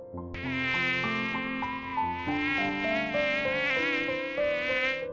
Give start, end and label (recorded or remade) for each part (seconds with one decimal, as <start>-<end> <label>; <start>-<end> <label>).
0.0-5.1 recorded